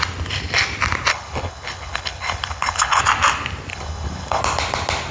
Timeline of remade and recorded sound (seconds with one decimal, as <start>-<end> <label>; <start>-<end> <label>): 0.0-1.1 recorded; 1.1-3.0 remade; 3.0-3.7 recorded; 3.7-4.4 remade; 4.4-5.1 recorded